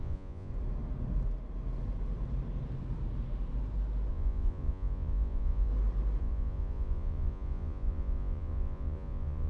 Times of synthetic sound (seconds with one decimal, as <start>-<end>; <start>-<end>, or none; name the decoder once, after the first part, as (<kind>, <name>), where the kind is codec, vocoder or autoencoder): 0.0-0.5 (vocoder, Vocos); 4.1-5.7; 6.2-9.5